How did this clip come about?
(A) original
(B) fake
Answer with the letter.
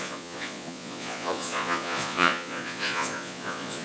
B